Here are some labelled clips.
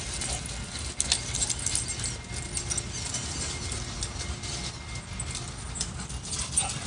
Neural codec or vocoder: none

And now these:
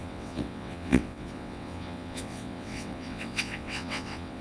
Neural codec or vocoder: vocoder, WaveNeXt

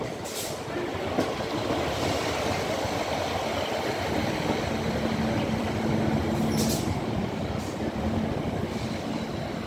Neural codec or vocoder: none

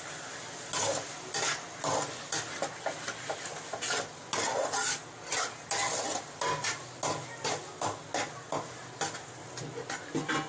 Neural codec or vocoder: none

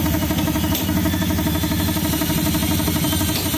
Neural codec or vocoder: none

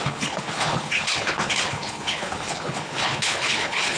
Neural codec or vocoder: codec, HILCodec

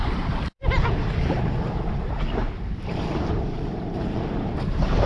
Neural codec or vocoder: vocoder, BigVGAN v2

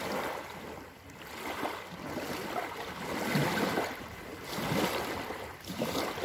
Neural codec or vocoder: none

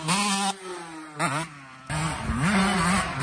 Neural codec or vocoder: none